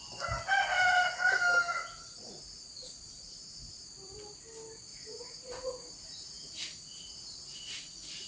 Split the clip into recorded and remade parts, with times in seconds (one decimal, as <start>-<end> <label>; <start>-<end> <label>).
0.0-1.7 recorded; 1.7-3.9 remade; 3.9-4.9 recorded; 4.9-8.3 remade